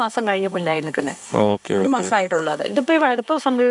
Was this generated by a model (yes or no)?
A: yes